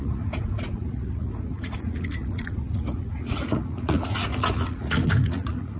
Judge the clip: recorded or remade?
remade